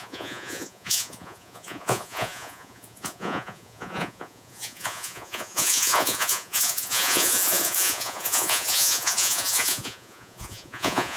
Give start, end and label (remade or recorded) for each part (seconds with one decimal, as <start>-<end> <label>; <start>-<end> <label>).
0.0-11.2 remade